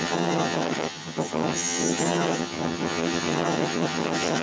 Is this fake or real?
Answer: fake